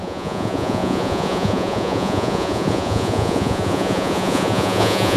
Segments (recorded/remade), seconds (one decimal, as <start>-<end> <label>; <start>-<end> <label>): 0.0-5.2 remade

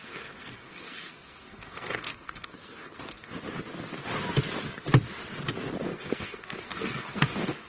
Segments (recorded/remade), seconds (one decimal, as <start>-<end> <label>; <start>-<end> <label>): 0.0-3.3 remade; 3.3-5.9 recorded; 5.9-7.3 remade; 7.3-7.7 recorded

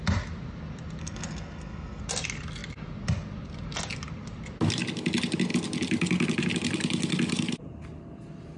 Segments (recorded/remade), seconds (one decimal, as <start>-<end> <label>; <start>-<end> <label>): 0.0-1.0 recorded; 1.0-2.0 remade; 2.0-8.6 recorded

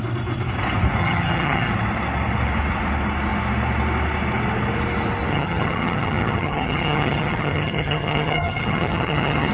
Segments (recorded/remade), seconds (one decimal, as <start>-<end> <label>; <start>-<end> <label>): 0.0-1.0 recorded; 1.0-1.7 remade; 1.7-5.3 recorded; 5.3-9.5 remade

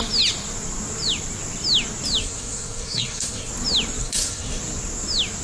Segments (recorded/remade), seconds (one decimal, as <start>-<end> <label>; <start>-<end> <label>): 0.0-2.2 recorded; 2.2-3.5 remade; 3.5-4.0 recorded; 4.0-4.6 remade; 4.6-5.4 recorded